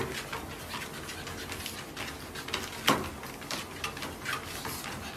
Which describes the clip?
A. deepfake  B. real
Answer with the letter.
B